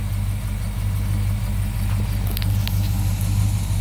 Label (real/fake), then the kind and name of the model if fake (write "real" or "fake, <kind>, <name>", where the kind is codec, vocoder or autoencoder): real